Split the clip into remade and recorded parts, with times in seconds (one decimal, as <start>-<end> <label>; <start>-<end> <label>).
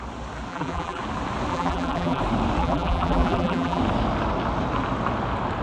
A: 0.0-0.5 recorded; 0.5-1.0 remade; 1.0-1.5 recorded; 1.5-2.2 remade; 2.2-2.6 recorded; 2.6-3.8 remade; 3.8-5.6 recorded